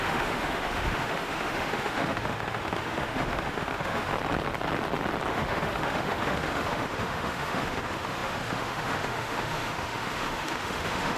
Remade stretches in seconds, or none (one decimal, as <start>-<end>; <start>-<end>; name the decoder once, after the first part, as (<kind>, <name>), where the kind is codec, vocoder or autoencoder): 0.0-4.1 (autoencoder, DAC-VAE); 5.3-11.2